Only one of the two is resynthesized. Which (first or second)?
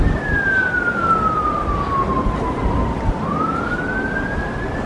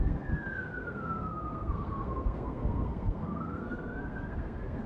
second